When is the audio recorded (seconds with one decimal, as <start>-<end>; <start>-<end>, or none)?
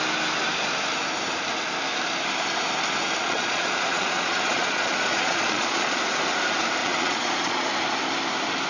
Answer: 0.0-3.2; 6.0-6.8; 7.7-8.7